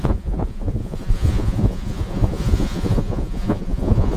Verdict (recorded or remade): remade